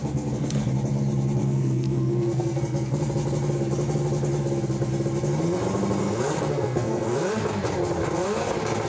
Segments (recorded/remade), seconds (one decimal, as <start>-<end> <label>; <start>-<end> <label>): 0.0-0.7 remade; 0.7-1.4 recorded; 1.4-3.0 remade; 3.0-6.0 recorded; 6.0-7.3 remade; 7.3-8.9 recorded